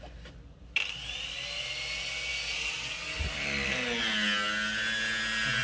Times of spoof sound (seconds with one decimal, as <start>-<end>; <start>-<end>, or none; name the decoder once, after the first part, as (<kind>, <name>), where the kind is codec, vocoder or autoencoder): none